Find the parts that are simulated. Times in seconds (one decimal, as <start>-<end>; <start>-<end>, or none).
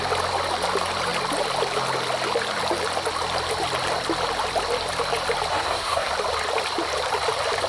5.5-6.1